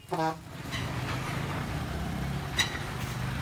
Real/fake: real